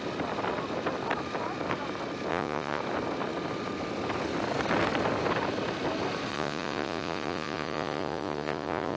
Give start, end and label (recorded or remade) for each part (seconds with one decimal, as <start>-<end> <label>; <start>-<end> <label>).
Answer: 0.0-2.3 recorded; 2.3-2.8 remade; 2.8-6.3 recorded; 6.3-9.0 remade